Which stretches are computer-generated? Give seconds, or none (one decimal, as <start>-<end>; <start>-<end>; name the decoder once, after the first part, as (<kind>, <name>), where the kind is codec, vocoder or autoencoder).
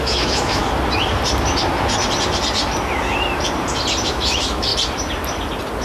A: 0.0-0.6 (autoencoder, DAC-VAE); 4.1-4.7